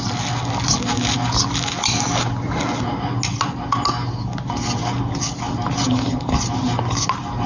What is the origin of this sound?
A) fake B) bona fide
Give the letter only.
B